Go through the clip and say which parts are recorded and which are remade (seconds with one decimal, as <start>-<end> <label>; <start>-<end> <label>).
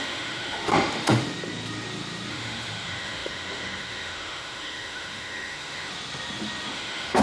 0.0-1.2 remade; 1.2-2.3 recorded; 2.3-5.9 remade; 5.9-6.7 recorded; 6.7-7.2 remade